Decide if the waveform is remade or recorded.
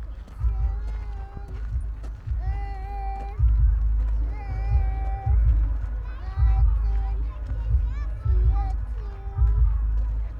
recorded